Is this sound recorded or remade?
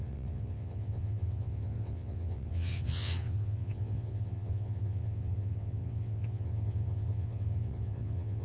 remade